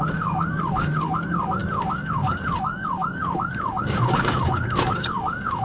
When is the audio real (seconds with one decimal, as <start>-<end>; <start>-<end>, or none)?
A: none